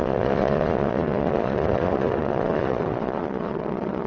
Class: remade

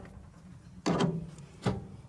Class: recorded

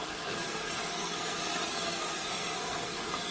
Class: remade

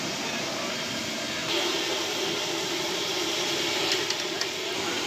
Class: recorded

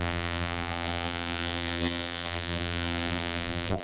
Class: remade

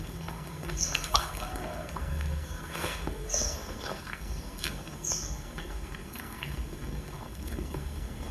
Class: remade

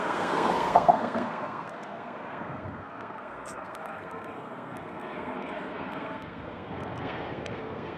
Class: remade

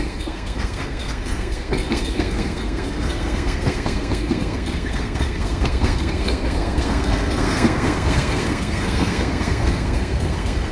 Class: remade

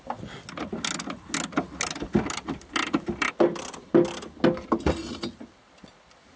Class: recorded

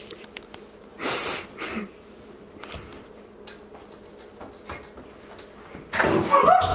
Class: recorded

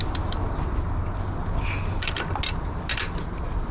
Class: recorded